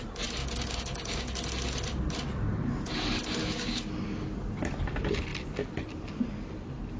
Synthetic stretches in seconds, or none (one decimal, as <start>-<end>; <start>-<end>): 0.4-1.3; 3.4-3.9